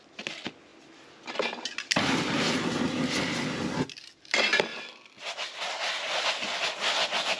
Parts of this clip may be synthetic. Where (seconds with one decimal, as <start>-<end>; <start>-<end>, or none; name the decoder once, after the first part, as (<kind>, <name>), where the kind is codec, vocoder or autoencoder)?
none

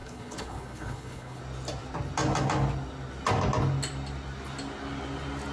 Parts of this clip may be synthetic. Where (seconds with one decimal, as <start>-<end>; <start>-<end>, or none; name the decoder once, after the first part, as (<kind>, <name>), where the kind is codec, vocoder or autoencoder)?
0.0-1.4 (codec, HILCodec)

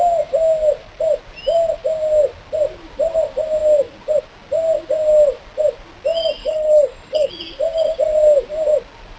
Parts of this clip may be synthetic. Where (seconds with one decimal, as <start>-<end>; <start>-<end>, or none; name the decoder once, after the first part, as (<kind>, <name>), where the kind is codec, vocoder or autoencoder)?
6.4-7.3 (codec, HILCodec)

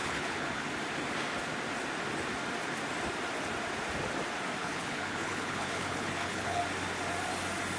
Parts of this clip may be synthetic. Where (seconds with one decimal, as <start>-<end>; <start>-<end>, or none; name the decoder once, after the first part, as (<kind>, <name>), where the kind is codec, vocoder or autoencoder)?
0.0-0.6 (codec, HILCodec); 4.6-6.6

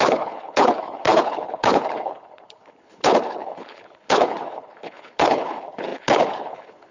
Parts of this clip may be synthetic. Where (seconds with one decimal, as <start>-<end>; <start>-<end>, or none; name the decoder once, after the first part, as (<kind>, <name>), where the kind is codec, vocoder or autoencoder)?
0.0-6.9 (codec, HILCodec)

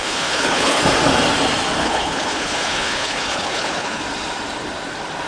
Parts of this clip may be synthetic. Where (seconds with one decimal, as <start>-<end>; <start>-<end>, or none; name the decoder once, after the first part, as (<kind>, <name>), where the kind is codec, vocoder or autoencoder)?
0.0-0.8 (codec, HILCodec); 1.8-4.0

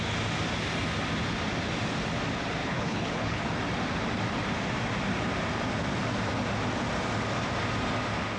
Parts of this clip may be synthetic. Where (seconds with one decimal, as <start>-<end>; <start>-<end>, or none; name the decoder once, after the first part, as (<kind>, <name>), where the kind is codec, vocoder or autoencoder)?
2.6-3.4 (codec, HILCodec)